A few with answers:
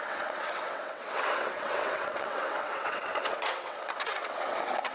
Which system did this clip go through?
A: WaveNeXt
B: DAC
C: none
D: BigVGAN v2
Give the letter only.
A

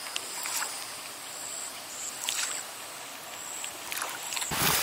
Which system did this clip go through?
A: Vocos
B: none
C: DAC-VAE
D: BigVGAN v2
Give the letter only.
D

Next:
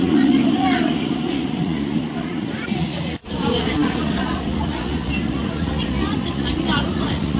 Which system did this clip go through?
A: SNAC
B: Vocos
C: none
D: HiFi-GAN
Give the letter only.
B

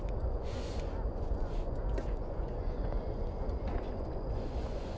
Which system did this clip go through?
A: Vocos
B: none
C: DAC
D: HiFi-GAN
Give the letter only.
A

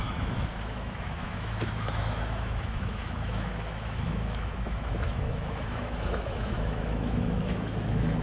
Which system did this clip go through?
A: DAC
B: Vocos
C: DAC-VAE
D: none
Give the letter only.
C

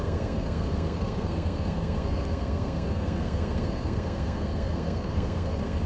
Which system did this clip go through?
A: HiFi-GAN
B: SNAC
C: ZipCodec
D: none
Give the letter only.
B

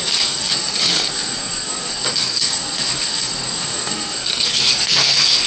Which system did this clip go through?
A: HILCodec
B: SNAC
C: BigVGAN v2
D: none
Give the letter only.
B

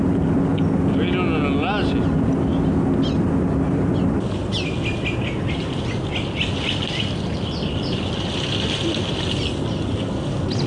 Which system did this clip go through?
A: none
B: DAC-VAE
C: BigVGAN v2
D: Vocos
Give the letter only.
A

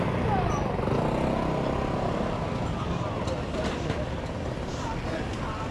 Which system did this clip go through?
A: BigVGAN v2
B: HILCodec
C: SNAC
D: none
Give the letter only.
D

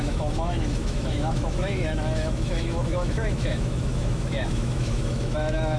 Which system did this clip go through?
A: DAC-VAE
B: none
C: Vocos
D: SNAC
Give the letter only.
A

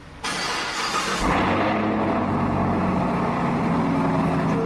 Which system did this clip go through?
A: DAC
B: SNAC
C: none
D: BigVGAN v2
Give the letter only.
C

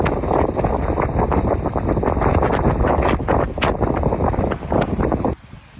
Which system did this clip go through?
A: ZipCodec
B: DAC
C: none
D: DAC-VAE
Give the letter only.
C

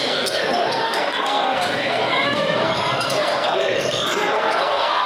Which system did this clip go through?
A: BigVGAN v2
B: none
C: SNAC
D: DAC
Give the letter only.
C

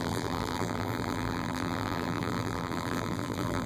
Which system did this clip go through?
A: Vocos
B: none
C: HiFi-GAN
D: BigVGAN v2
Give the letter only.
D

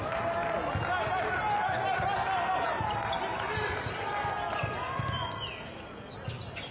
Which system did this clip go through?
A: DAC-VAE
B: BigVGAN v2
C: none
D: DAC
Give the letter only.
C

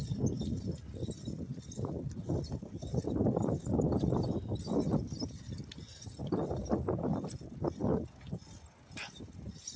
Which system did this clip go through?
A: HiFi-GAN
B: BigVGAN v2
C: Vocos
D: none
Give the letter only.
D